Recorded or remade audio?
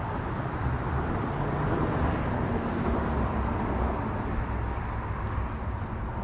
recorded